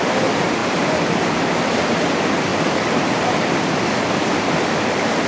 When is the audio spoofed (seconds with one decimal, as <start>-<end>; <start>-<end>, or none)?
0.6-1.5; 2.5-3.7